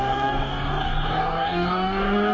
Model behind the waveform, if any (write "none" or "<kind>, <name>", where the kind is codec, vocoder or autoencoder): codec, DAC